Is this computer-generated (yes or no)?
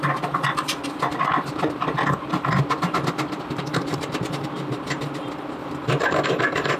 yes